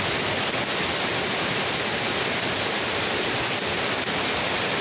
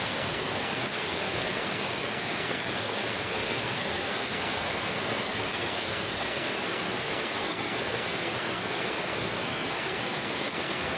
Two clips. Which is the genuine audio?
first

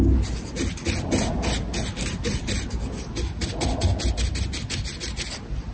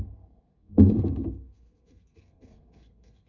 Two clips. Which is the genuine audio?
first